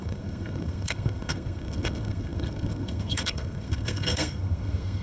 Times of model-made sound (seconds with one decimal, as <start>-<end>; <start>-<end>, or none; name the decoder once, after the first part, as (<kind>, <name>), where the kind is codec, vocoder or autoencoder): 0.0-5.0 (codec, SNAC)